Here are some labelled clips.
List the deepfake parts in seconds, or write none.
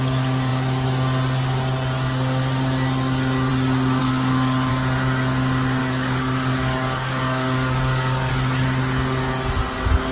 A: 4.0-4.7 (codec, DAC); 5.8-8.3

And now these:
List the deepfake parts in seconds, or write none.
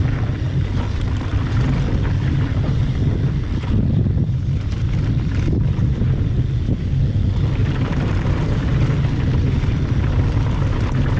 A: 1.3-6.0 (vocoder, BigVGAN v2); 7.6-9.1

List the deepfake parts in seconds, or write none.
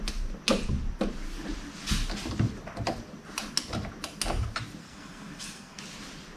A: 4.8-5.8 (codec, SNAC)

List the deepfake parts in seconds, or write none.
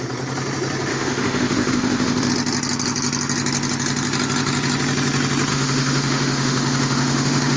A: 0.9-2.3 (autoencoder, DAC-VAE); 5.5-7.6